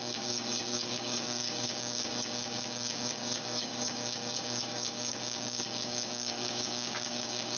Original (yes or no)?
no